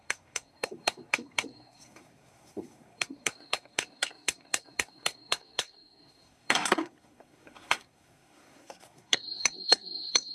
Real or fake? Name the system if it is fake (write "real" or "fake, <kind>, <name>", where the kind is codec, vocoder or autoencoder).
fake, codec, SNAC